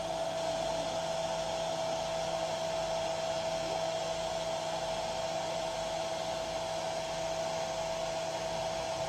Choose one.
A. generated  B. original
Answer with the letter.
B